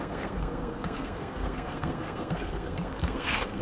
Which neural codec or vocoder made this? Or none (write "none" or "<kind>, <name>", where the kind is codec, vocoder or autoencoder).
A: codec, SNAC